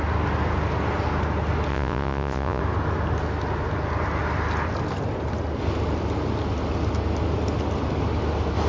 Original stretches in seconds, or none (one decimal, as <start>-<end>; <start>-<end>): 0.0-1.7; 2.6-8.7